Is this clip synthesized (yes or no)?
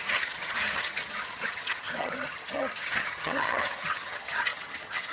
yes